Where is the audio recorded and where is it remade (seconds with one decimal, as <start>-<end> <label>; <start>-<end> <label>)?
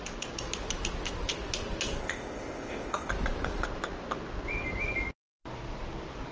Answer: 0.0-2.0 recorded; 2.0-3.1 remade; 3.1-6.3 recorded